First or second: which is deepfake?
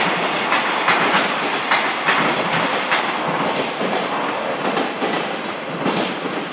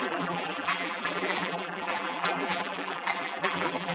second